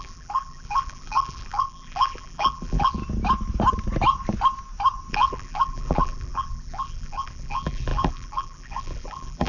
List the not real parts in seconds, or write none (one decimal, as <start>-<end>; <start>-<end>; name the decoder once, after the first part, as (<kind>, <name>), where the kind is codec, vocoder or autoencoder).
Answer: 0.0-3.0 (vocoder, BigVGAN v2); 5.1-9.5